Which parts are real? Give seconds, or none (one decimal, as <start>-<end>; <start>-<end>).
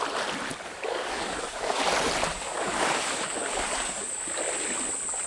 0.0-0.5; 1.8-2.3; 4.4-5.3